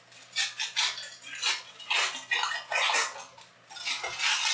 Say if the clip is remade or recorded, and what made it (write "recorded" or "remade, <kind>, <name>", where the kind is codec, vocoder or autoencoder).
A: recorded